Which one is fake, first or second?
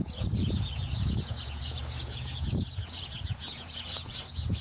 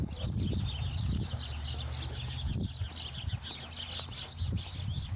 first